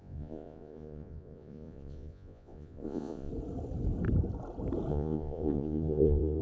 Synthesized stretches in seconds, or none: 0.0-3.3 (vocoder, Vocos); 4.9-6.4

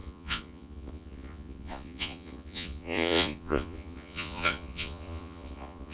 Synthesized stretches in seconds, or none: 0.0-5.9 (vocoder, Vocos)

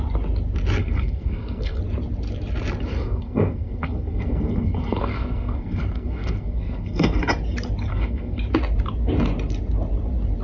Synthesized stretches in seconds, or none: 0.8-1.8 (codec, SNAC); 2.9-7.2; 7.9-8.4

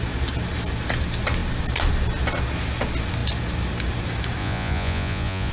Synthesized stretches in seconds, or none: 4.4-5.5 (vocoder, Vocos)

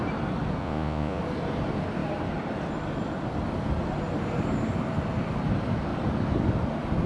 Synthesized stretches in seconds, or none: 0.6-1.2 (vocoder, Vocos)

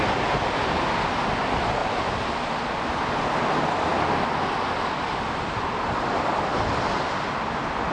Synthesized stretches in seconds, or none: none